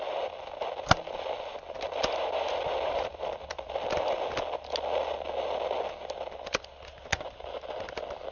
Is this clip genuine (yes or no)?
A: yes